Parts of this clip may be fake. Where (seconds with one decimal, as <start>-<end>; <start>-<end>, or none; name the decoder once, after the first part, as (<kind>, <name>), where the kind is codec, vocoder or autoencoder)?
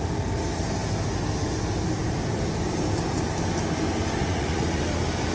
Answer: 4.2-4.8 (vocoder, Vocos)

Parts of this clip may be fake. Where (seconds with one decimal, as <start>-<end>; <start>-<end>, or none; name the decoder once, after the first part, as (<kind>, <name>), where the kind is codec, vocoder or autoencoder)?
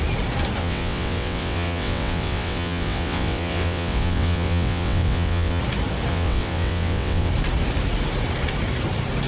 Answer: 0.6-5.6 (vocoder, WaveNeXt); 6.1-7.3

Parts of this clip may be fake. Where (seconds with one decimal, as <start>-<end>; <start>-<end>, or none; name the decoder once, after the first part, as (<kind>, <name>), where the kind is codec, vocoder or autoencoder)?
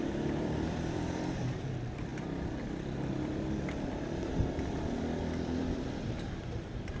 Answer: 0.0-7.0 (vocoder, BigVGAN v2)